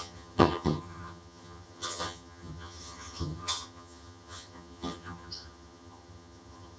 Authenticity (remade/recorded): remade